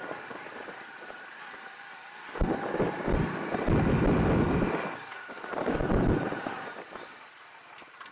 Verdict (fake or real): real